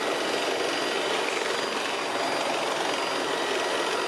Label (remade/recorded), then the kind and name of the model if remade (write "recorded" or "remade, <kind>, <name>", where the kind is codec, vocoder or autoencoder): recorded